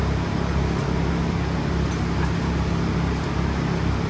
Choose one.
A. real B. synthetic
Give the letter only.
A